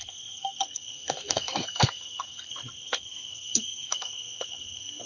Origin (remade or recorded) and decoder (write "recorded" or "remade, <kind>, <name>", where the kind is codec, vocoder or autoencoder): remade, codec, SNAC